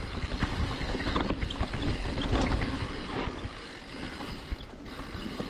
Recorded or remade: recorded